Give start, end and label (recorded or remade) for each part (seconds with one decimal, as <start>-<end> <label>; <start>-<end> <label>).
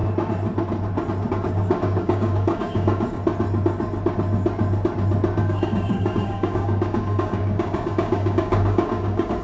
0.0-1.3 recorded; 1.3-3.2 remade; 3.2-5.4 recorded; 5.4-9.4 remade